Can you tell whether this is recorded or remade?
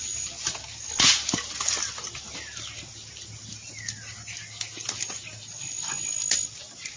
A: recorded